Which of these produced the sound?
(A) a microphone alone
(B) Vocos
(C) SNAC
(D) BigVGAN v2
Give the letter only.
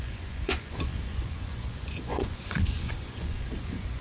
B